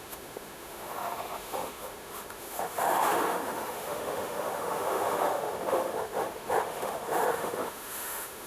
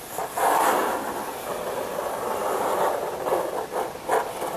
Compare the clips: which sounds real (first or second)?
second